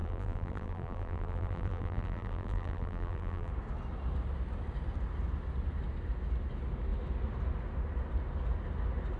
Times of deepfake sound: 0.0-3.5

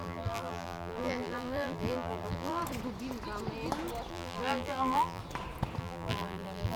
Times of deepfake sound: 0.0-2.6; 4.1-5.2; 5.8-6.8

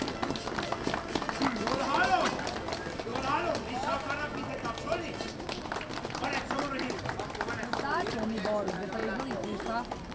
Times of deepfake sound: none

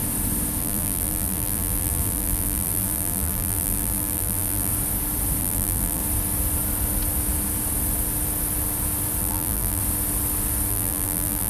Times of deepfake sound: 0.6-4.7; 5.4-6.0; 9.2-9.8; 10.7-11.5

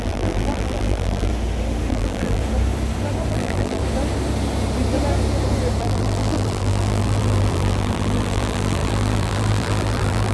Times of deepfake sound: 0.0-1.3; 1.9-2.4; 3.3-3.8; 5.8-10.3

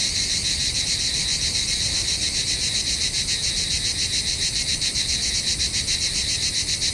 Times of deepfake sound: 0.8-3.4; 4.6-6.9

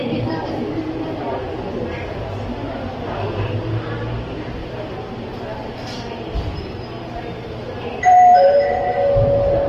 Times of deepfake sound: 0.0-1.1; 8.1-8.8